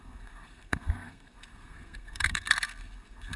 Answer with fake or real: fake